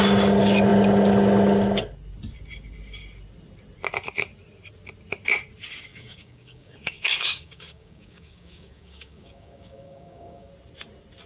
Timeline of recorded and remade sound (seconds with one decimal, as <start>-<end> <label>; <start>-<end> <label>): 0.0-5.9 recorded; 5.9-10.5 remade; 10.5-11.3 recorded